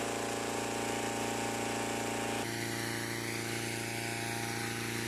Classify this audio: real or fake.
real